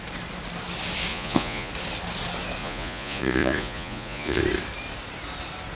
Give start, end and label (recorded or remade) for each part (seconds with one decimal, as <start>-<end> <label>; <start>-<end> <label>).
0.0-1.1 recorded; 1.1-1.7 remade; 1.7-2.6 recorded; 2.6-4.4 remade; 4.4-5.7 recorded

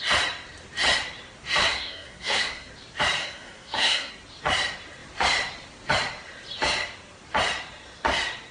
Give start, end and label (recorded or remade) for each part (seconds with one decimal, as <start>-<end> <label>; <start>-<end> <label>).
0.0-1.6 recorded; 1.6-2.7 remade; 2.7-3.2 recorded; 3.2-4.1 remade; 4.1-8.5 recorded

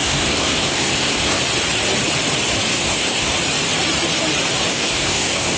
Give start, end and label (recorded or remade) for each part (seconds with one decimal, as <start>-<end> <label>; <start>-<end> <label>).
0.0-1.4 remade; 1.4-2.7 recorded; 2.7-3.3 remade; 3.3-4.7 recorded; 4.7-5.6 remade

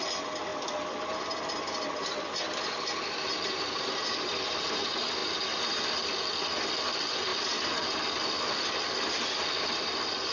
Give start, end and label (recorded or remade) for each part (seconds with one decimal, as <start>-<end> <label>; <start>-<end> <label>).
0.0-10.3 recorded

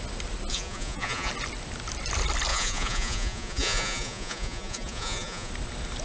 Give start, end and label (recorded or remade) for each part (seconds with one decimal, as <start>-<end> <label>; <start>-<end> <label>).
0.0-0.5 recorded; 0.5-1.3 remade; 1.3-2.5 recorded; 2.5-5.5 remade; 5.5-6.0 recorded

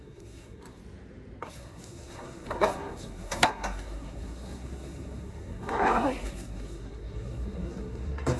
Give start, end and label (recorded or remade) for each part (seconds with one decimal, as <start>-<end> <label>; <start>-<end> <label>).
0.0-0.8 remade; 0.8-1.4 recorded; 1.4-8.4 remade

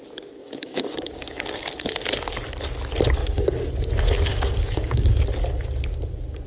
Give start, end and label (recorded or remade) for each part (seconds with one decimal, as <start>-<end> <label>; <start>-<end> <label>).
0.0-0.4 recorded; 0.4-1.7 remade; 1.7-3.2 recorded; 3.2-3.7 remade; 3.7-4.3 recorded; 4.3-5.1 remade; 5.1-6.5 recorded